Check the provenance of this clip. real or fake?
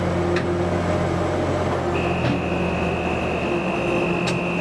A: real